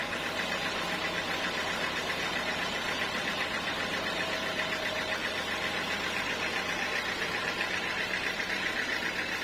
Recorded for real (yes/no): no